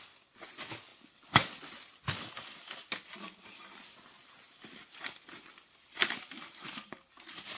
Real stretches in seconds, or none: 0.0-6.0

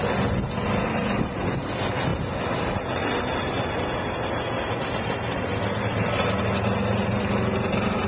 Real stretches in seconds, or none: 0.0-8.1

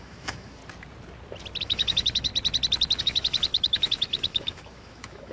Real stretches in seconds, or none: 0.6-1.6; 2.3-3.0

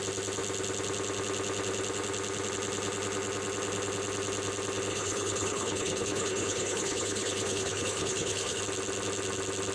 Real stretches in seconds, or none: 0.0-4.9; 8.6-9.7

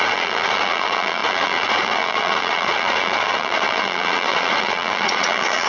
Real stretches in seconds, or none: none

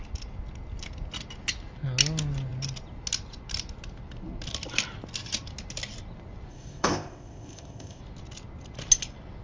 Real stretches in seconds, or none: 0.0-6.5; 8.0-9.4

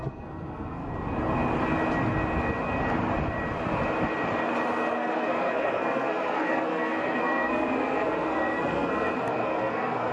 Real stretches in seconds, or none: 0.8-4.9

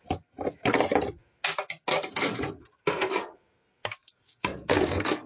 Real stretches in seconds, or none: 0.0-3.8